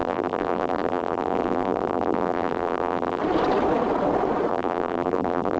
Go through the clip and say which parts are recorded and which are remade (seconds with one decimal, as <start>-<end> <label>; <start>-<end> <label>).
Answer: 0.0-3.2 remade; 3.2-4.5 recorded; 4.5-5.6 remade